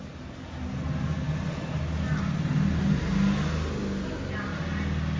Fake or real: real